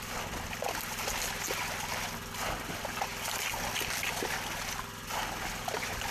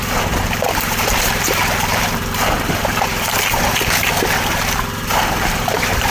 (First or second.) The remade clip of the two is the second